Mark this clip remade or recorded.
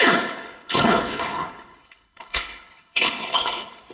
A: remade